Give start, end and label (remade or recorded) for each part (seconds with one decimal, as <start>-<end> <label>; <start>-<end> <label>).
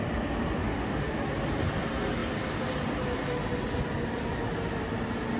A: 0.0-0.6 recorded; 0.6-1.2 remade; 1.2-5.4 recorded